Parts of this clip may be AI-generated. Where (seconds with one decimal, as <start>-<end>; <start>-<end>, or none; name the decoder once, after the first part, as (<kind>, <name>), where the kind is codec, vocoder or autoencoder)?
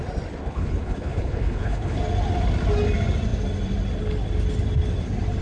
0.4-2.0 (codec, HILCodec)